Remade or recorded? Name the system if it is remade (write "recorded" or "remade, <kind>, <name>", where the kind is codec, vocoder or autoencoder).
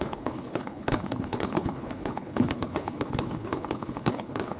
remade, codec, HILCodec